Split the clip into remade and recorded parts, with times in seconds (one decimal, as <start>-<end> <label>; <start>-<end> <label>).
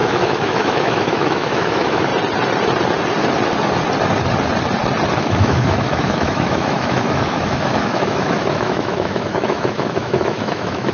0.0-2.1 remade; 2.1-5.2 recorded; 5.2-10.9 remade